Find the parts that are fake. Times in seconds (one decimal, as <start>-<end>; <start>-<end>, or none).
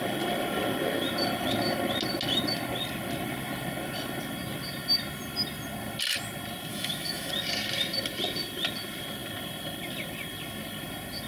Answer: 6.7-7.3